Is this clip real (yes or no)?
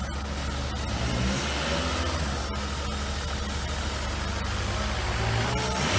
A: yes